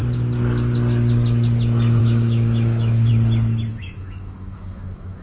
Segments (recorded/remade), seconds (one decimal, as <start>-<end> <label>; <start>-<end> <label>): 0.0-2.0 recorded; 2.0-3.1 remade; 3.1-3.7 recorded; 3.7-5.2 remade

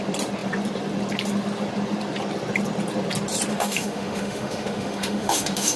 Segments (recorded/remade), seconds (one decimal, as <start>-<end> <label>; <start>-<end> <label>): 0.0-3.5 recorded; 3.5-5.8 remade

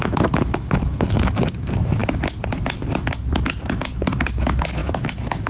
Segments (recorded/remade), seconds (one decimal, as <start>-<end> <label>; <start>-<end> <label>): 0.0-2.0 remade; 2.0-4.3 recorded; 4.3-5.5 remade